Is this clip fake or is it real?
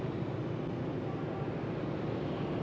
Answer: real